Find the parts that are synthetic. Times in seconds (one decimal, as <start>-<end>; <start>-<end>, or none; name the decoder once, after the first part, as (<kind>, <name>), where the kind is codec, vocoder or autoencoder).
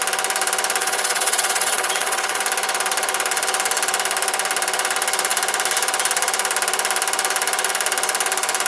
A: 0.8-2.4 (vocoder, WaveNeXt)